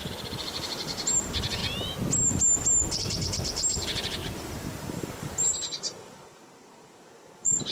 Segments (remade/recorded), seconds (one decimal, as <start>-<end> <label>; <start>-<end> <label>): 0.0-1.6 remade; 1.6-3.0 recorded; 3.0-7.7 remade